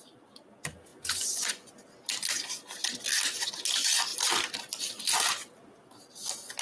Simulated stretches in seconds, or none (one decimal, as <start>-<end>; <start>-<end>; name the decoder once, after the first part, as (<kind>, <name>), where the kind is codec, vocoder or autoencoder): 0.9-1.7 (vocoder, Vocos)